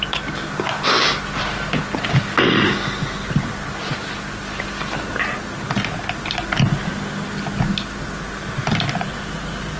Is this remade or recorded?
recorded